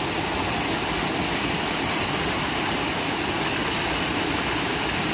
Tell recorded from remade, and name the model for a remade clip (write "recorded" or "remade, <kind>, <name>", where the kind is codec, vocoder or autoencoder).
recorded